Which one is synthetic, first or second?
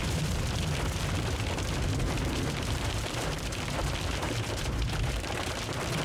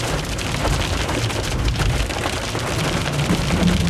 first